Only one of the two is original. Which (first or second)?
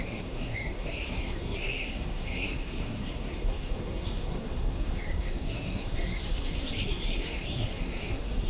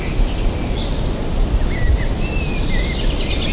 second